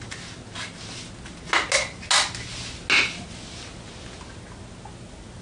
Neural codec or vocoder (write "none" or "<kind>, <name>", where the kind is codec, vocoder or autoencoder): none